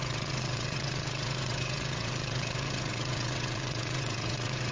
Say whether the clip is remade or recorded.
remade